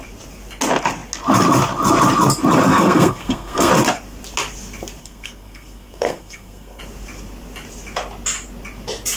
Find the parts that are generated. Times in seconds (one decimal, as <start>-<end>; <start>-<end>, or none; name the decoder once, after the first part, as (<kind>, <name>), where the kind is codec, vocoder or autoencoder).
2.7-3.7 (codec, SNAC); 5.0-6.8